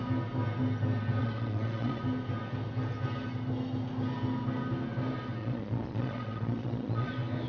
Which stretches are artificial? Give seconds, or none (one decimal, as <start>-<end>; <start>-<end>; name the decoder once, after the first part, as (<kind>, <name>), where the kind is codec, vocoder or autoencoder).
1.2-2.0 (vocoder, Vocos); 5.4-7.1